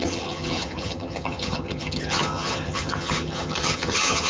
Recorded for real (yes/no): no